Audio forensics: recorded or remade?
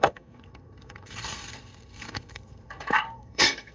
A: remade